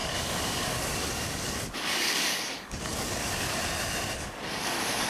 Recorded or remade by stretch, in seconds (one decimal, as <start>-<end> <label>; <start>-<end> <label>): 0.0-3.6 remade; 3.6-4.2 recorded; 4.2-5.1 remade